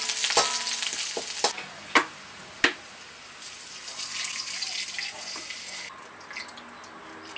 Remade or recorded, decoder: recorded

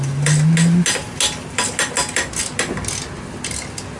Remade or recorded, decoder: recorded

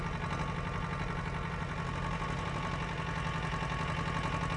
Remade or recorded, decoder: recorded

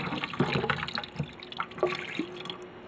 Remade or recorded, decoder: recorded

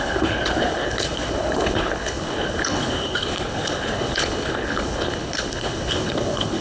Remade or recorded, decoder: remade, codec, HILCodec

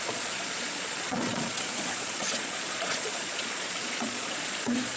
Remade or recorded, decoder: remade, vocoder, Vocos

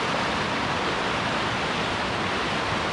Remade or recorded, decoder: recorded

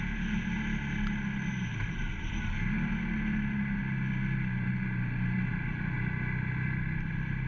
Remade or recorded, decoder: recorded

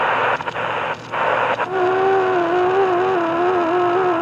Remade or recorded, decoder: recorded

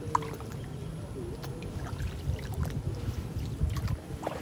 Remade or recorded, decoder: recorded